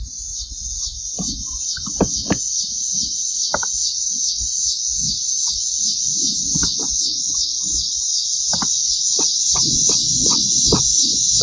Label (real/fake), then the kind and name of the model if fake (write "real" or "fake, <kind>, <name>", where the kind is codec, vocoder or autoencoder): real